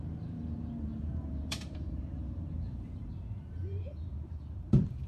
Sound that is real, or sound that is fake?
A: fake